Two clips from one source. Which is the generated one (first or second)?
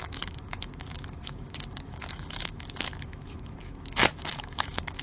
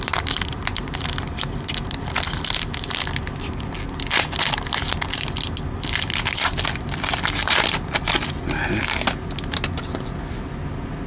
first